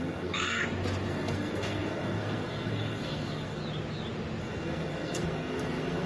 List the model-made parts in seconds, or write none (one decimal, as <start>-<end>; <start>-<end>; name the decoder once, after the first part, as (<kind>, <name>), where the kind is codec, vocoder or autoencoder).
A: 0.0-0.6 (codec, SNAC); 1.1-3.6; 4.4-6.1